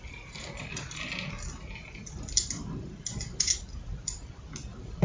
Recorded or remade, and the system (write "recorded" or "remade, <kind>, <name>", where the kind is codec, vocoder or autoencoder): recorded